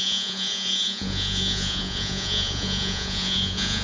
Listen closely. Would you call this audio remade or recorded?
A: remade